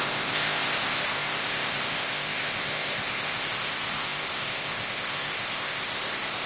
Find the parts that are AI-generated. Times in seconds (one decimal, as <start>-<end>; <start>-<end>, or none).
0.0-6.5